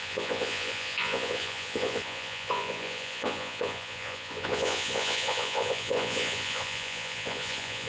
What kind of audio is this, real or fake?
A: fake